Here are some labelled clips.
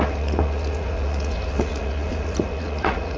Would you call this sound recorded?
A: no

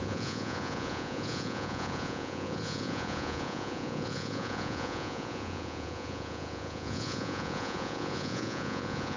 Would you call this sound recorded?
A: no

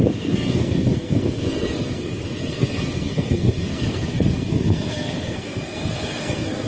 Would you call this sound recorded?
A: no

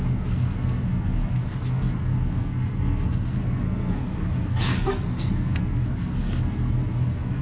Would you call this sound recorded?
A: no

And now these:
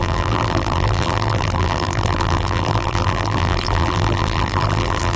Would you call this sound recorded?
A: no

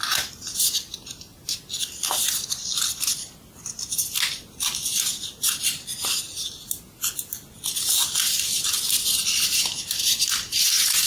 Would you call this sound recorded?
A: yes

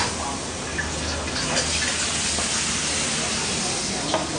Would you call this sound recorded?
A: yes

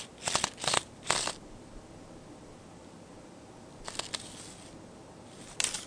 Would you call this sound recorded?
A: yes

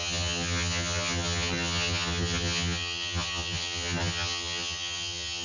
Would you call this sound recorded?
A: no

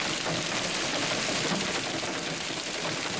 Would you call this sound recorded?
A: yes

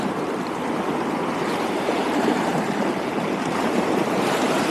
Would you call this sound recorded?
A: no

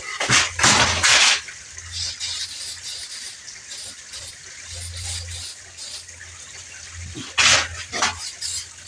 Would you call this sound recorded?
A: yes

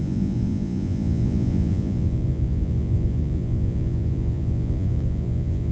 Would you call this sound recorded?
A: no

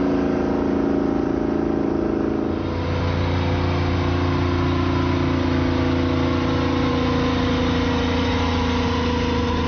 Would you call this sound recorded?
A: yes